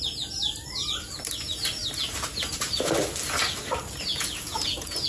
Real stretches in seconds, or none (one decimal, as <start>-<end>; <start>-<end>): 0.0-4.1